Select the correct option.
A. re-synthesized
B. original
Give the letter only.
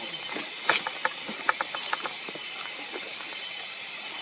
A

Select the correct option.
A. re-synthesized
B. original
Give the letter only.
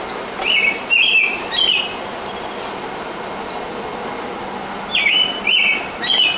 B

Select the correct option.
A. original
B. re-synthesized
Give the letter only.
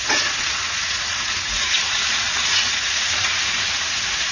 B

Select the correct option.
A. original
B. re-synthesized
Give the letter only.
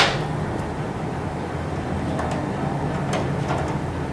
A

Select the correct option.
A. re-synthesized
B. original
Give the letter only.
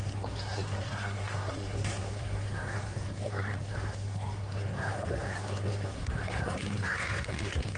A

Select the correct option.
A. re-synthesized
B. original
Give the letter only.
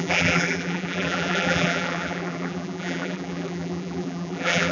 A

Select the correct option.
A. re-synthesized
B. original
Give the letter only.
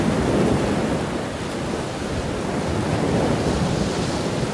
B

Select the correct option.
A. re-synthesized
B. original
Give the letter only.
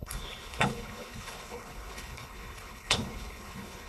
A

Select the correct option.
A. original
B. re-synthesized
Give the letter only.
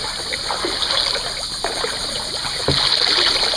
A